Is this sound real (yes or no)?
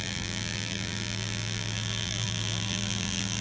no